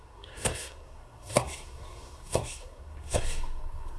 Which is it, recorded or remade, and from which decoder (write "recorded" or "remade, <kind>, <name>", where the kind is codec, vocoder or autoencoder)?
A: remade, codec, SNAC